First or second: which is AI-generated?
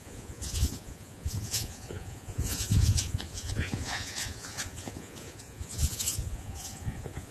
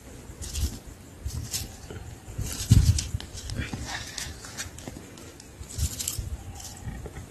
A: first